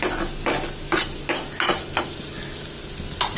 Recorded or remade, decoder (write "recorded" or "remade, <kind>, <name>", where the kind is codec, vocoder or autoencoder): recorded